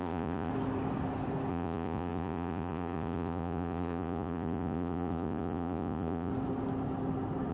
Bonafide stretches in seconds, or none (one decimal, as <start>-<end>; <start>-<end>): 0.5-1.5; 6.3-7.5